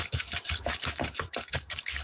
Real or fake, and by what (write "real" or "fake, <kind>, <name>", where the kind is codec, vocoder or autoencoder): fake, codec, DAC